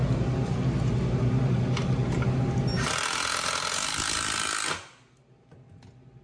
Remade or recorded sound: recorded